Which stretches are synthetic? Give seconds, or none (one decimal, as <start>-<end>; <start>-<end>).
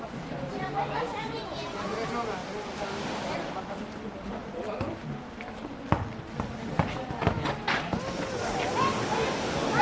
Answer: none